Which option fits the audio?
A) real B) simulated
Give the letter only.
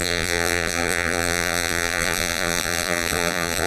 B